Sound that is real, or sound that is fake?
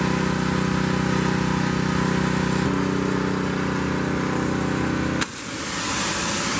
real